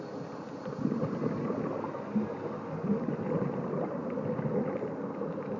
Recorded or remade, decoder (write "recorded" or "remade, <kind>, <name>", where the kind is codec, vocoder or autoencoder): recorded